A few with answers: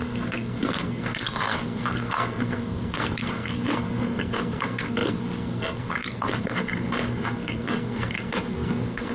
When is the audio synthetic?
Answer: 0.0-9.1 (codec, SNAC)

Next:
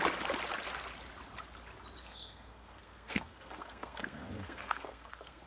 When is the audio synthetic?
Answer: 2.0-5.5 (codec, SNAC)

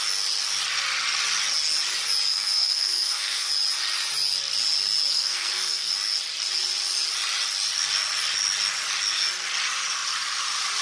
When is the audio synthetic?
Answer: 2.3-3.5 (codec, SNAC); 5.1-5.9

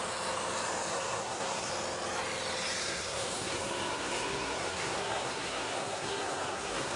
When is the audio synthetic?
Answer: 0.9-1.7 (codec, SNAC); 2.8-7.0